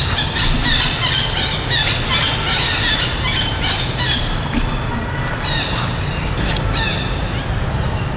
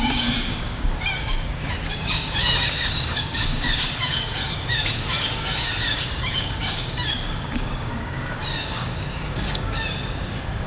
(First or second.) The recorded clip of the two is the first